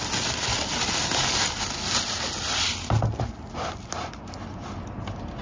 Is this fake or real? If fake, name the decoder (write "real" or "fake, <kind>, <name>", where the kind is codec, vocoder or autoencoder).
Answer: real